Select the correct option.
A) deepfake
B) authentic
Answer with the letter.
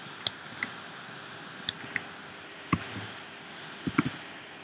B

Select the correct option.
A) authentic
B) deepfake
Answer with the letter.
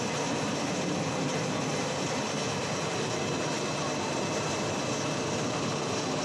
A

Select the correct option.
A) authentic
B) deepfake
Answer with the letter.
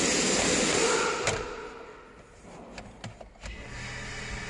A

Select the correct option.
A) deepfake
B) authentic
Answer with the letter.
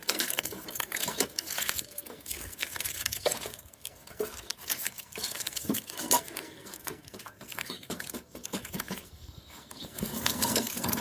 A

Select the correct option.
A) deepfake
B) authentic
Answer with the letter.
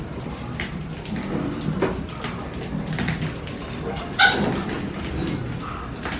B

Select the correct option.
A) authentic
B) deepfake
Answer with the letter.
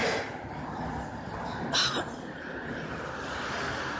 A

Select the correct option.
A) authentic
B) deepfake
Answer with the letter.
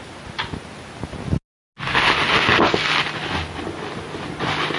A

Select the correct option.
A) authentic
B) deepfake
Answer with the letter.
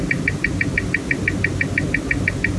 A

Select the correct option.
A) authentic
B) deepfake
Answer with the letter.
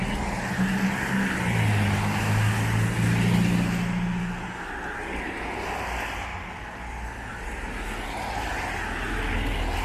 A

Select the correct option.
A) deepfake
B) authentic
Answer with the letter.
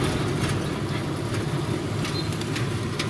B